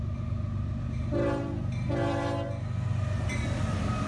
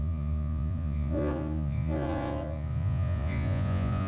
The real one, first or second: first